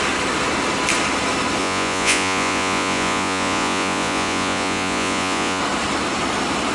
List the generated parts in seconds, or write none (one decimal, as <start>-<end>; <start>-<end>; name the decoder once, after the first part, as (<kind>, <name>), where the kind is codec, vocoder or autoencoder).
1.6-5.6 (vocoder, Vocos)